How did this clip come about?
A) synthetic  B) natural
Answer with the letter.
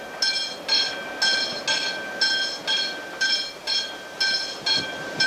B